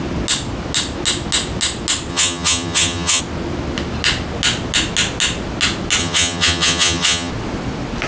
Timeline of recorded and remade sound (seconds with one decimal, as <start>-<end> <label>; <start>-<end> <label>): 0.0-2.1 recorded; 2.1-3.2 remade; 3.2-6.0 recorded; 6.0-7.3 remade; 7.3-8.1 recorded